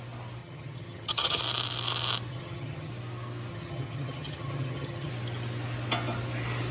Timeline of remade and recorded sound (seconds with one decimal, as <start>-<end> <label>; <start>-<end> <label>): 0.0-0.4 recorded; 0.4-1.4 remade; 1.4-2.3 recorded; 2.3-2.9 remade; 2.9-3.5 recorded; 3.5-5.1 remade; 5.1-6.7 recorded